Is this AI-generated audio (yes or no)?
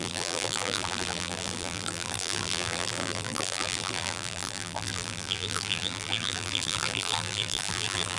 yes